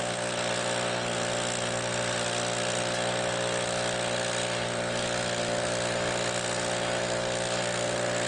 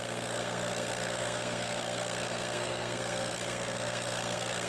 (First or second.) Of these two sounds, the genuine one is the first